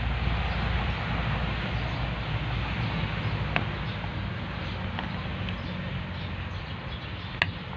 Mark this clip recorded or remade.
recorded